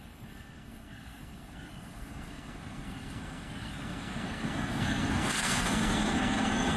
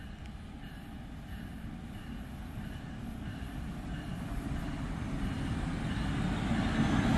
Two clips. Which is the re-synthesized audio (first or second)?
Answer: first